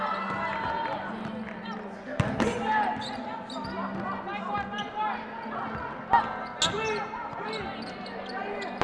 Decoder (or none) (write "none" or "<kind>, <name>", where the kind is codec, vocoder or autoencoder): none